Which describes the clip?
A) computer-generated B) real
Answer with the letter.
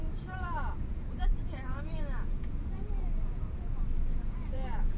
A